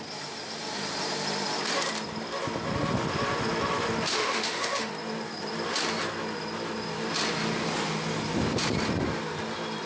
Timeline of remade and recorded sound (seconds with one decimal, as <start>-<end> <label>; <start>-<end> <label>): 0.0-4.1 recorded; 4.1-4.9 remade; 4.9-9.9 recorded